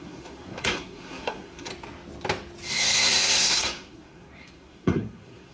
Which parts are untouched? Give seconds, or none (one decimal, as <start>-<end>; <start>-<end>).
1.7-2.7

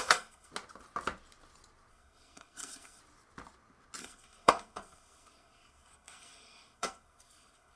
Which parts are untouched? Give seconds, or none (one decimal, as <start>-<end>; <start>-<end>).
0.5-1.9; 3.0-4.0

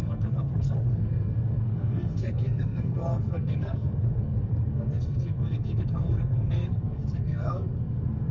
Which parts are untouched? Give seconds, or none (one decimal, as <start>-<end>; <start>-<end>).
none

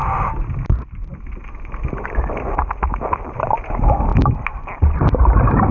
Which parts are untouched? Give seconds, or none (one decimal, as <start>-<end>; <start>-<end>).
0.0-5.7